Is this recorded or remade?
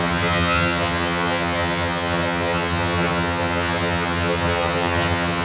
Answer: remade